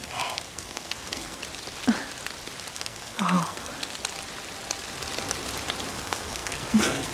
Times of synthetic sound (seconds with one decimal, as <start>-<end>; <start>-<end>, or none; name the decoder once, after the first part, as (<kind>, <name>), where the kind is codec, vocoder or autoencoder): 0.0-1.4 (codec, SNAC); 2.7-3.7; 5.9-7.1